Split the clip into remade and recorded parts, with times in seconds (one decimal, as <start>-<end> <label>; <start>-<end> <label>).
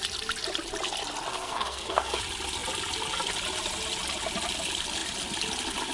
0.0-1.3 recorded; 1.3-2.2 remade; 2.2-5.9 recorded